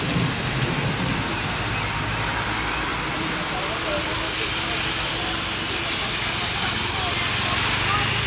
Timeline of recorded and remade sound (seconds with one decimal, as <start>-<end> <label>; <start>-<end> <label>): 0.0-2.9 recorded; 2.9-5.9 remade; 5.9-8.3 recorded